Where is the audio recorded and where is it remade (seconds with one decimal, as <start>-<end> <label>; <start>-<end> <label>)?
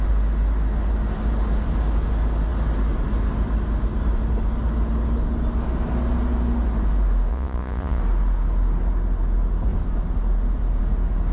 0.0-7.3 recorded; 7.3-8.0 remade; 8.0-11.3 recorded